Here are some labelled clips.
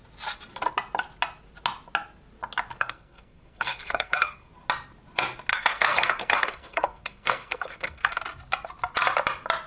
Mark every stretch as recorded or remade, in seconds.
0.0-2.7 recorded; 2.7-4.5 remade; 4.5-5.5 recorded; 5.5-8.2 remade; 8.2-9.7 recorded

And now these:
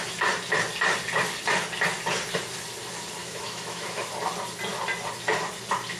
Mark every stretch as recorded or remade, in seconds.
0.0-3.2 recorded; 3.2-4.1 remade; 4.1-6.0 recorded

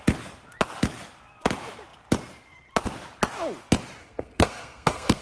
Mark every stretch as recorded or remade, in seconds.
0.0-4.0 recorded; 4.0-5.2 remade

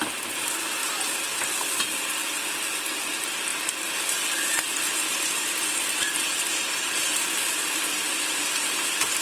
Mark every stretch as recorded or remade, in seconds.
0.0-0.8 recorded; 0.8-3.1 remade; 3.1-3.5 recorded; 3.5-9.2 remade